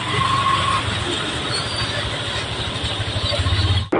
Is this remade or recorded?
recorded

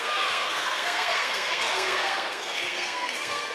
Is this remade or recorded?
remade